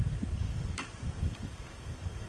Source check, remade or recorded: remade